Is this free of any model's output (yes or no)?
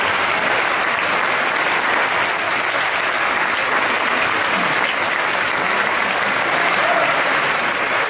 yes